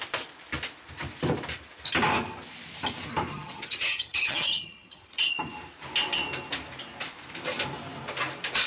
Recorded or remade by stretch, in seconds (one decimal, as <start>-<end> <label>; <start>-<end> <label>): 0.0-3.3 recorded; 3.3-5.2 remade; 5.2-8.7 recorded